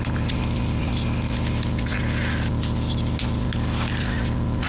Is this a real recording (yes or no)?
yes